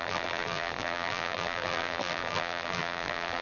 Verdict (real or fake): fake